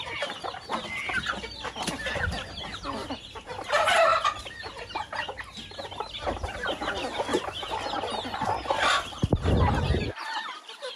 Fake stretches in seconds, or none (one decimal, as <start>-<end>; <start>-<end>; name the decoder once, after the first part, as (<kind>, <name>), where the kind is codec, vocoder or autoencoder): none